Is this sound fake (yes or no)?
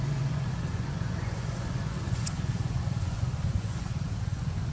yes